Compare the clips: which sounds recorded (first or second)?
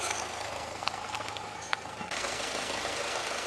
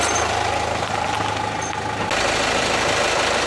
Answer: second